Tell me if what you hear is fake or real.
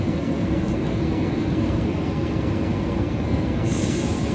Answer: fake